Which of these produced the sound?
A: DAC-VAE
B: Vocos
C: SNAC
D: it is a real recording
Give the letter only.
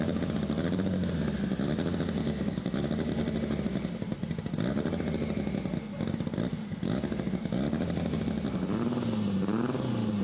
D